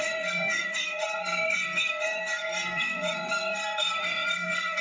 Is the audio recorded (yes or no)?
no